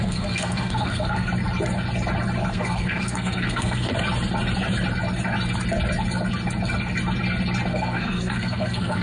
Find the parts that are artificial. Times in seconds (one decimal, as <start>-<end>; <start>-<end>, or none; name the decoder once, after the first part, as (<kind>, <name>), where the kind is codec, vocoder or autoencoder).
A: 0.0-1.3 (codec, SNAC); 2.5-3.9; 7.7-9.0